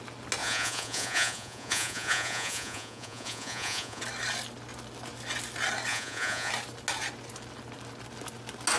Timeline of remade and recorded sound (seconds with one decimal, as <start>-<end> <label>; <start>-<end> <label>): 0.0-0.4 recorded; 0.4-4.0 remade; 4.0-5.9 recorded; 5.9-6.5 remade; 6.5-8.8 recorded